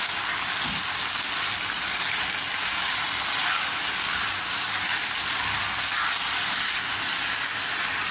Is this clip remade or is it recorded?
recorded